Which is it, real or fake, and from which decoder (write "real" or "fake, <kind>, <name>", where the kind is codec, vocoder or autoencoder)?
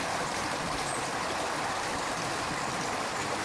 real